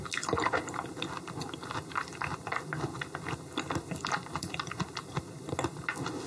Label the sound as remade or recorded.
recorded